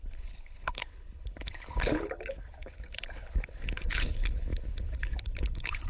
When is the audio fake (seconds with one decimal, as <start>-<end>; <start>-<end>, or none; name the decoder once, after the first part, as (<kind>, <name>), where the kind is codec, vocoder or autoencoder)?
0.0-5.9 (codec, HILCodec)